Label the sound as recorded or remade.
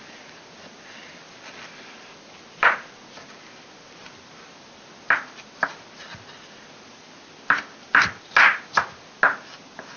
recorded